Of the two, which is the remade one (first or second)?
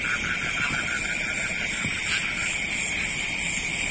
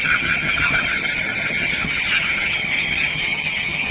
second